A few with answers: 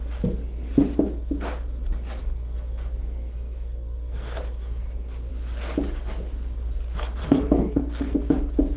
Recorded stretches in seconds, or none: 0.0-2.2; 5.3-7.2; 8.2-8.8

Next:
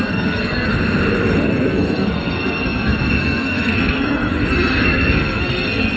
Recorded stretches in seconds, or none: 0.7-1.4